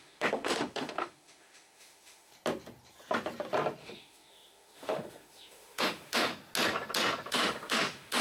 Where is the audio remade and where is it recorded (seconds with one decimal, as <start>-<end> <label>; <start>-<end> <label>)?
0.0-2.3 remade; 2.3-3.8 recorded; 3.8-6.3 remade; 6.3-7.3 recorded; 7.3-8.2 remade